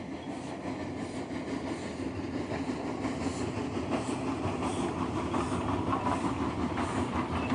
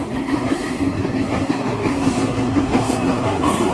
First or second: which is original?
first